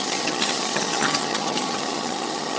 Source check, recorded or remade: remade